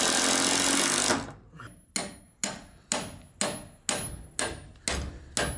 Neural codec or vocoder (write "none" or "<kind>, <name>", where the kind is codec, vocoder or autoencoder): none